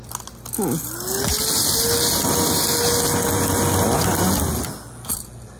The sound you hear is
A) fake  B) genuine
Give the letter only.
B